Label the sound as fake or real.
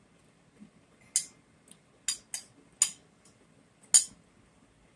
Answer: real